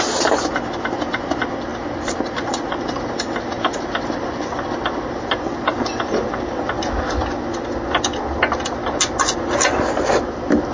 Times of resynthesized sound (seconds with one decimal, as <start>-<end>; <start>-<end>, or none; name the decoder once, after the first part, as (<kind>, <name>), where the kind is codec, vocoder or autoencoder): none